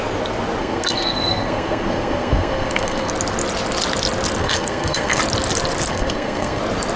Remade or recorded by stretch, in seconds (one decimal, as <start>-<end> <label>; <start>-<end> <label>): 0.0-0.6 recorded; 0.6-3.1 remade; 3.1-4.4 recorded; 4.4-5.2 remade; 5.2-5.9 recorded; 5.9-6.6 remade; 6.6-7.0 recorded